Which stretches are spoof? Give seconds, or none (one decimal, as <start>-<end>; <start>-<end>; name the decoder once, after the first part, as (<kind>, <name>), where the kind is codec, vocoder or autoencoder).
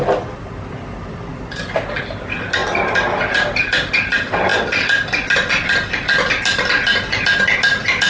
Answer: none